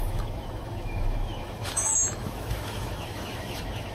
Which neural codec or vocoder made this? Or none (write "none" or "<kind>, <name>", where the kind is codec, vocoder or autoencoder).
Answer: autoencoder, DAC-VAE